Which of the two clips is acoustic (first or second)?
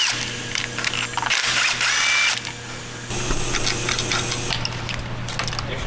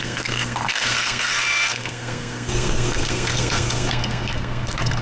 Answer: first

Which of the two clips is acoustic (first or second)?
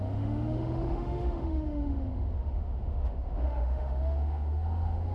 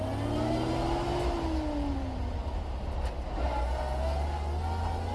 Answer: second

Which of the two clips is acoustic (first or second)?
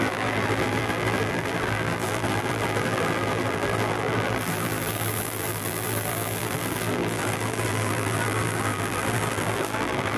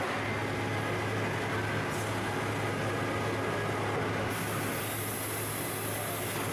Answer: second